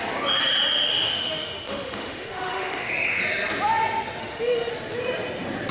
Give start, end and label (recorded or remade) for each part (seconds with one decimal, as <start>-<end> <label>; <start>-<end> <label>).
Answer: 0.0-0.9 recorded; 0.9-2.9 remade; 2.9-4.2 recorded; 4.2-4.7 remade; 4.7-5.7 recorded